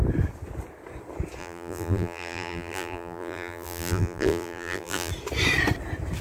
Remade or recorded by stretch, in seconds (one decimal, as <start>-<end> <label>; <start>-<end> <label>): 0.0-1.4 recorded; 1.4-5.1 remade; 5.1-6.2 recorded

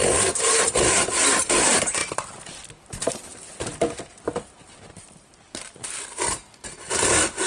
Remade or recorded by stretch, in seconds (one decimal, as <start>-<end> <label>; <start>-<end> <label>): 0.0-2.0 recorded; 2.0-6.2 remade; 6.2-7.5 recorded

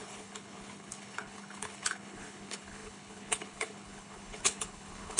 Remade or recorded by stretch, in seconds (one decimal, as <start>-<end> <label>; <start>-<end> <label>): 0.0-5.2 remade

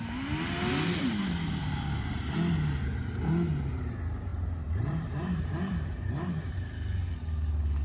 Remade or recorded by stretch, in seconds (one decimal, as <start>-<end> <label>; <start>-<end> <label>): 0.0-1.6 recorded; 1.6-2.2 remade; 2.2-4.3 recorded; 4.3-6.6 remade; 6.6-7.8 recorded

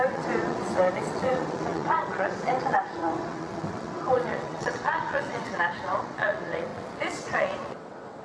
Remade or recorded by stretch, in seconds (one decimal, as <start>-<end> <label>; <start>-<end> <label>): 0.0-8.2 remade

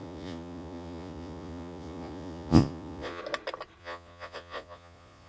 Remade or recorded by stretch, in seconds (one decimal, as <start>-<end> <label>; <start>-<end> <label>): 0.0-3.2 remade; 3.2-3.8 recorded; 3.8-5.3 remade